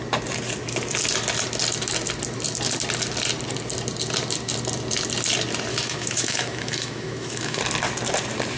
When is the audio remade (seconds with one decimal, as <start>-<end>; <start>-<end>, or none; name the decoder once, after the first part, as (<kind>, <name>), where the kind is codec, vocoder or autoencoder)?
5.7-7.6 (autoencoder, DAC-VAE)